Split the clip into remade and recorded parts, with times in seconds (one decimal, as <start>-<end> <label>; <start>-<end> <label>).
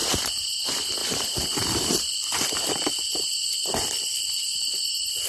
0.0-0.6 remade; 0.6-1.0 recorded; 1.0-4.2 remade; 4.2-5.3 recorded